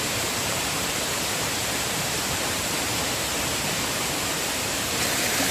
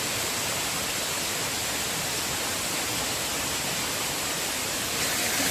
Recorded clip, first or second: second